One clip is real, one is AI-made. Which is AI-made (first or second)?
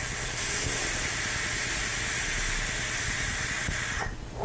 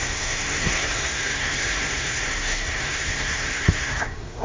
second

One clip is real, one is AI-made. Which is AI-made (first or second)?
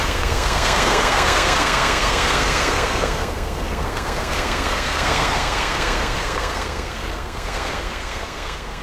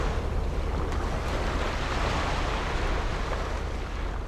first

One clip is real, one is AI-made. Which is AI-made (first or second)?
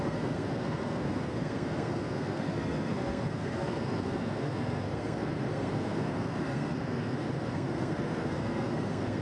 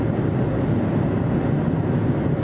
first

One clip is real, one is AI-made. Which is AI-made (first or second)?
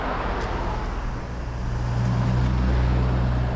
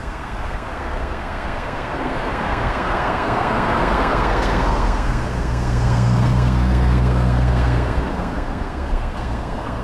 second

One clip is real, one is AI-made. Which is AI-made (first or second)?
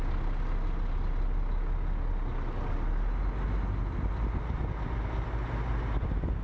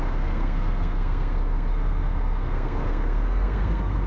second